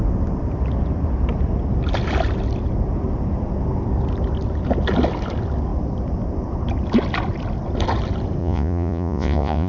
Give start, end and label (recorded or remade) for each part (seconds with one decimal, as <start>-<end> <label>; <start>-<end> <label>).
0.0-8.4 recorded; 8.4-9.7 remade